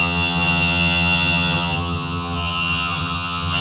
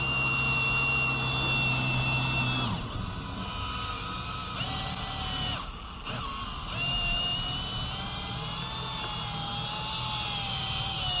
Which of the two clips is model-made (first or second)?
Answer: first